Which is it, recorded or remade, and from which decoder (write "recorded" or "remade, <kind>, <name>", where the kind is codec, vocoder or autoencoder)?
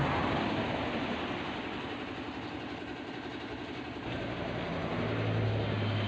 recorded